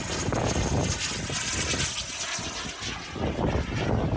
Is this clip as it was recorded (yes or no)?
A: yes